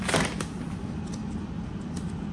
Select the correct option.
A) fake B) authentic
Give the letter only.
B